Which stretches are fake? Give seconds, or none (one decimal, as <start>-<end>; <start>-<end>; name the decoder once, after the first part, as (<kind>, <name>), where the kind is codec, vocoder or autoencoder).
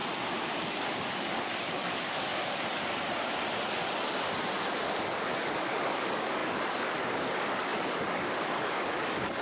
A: 0.7-2.3 (codec, DAC); 5.0-9.4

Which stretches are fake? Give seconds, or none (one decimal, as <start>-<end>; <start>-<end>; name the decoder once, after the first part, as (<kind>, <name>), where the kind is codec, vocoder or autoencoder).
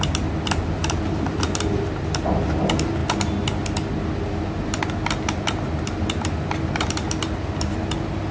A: none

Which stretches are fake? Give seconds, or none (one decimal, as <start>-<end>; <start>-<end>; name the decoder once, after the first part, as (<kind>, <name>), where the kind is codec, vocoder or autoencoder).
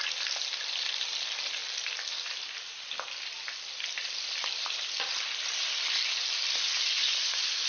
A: none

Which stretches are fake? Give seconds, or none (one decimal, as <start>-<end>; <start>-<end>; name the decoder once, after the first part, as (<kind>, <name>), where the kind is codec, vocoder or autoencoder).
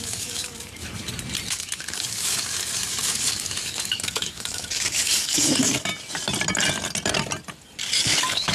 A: 0.0-0.8 (codec, DAC); 1.5-5.9; 8.0-8.5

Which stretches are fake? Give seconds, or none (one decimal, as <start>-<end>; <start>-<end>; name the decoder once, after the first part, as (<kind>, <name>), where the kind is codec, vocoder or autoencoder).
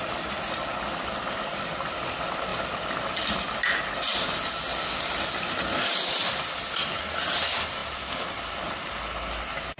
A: none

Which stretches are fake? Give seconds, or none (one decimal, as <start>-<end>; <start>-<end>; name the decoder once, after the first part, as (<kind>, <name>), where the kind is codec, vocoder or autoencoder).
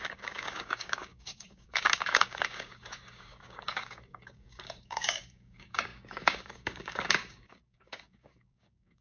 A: 0.0-9.0 (codec, DAC)